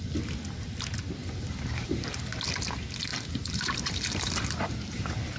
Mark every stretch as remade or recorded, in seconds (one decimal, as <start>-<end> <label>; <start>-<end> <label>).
0.0-1.2 recorded; 1.2-2.2 remade; 2.2-3.1 recorded; 3.1-5.0 remade; 5.0-5.4 recorded